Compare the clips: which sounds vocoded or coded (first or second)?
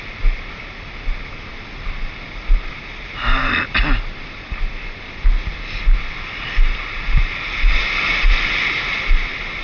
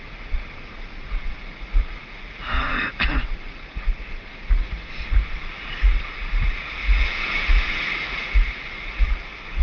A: second